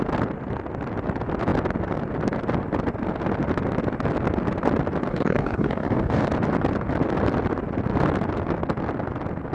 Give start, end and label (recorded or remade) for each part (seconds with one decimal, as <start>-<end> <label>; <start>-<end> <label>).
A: 0.0-5.1 recorded; 5.1-6.3 remade; 6.3-9.5 recorded